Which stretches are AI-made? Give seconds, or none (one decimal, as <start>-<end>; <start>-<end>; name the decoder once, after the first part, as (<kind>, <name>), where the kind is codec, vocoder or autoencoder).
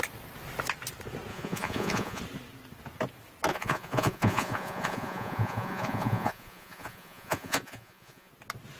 1.3-2.2 (vocoder, Vocos); 3.5-8.3